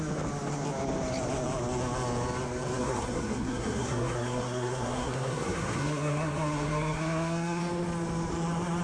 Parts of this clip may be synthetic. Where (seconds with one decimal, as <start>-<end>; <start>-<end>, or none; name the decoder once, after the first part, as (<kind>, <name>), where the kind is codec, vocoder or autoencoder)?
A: 2.8-7.6 (codec, SNAC)